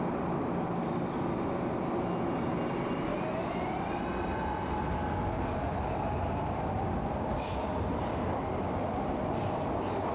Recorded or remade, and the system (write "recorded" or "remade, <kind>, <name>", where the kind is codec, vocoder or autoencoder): recorded